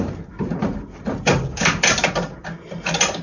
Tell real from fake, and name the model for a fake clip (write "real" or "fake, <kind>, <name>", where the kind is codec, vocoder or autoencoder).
fake, vocoder, BigVGAN v2